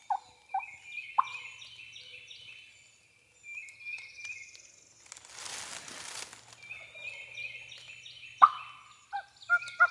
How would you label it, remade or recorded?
recorded